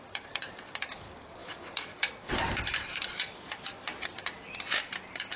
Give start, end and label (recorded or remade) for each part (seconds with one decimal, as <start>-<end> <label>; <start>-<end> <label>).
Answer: 0.0-3.7 remade; 3.7-4.8 recorded; 4.8-5.4 remade